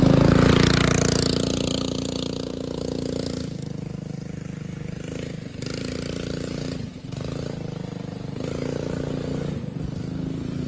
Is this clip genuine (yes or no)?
yes